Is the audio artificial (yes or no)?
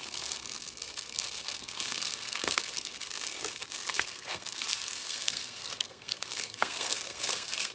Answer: yes